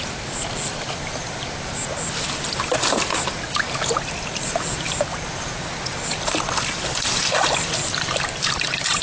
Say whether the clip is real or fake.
real